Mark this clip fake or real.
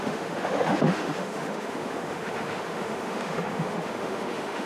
fake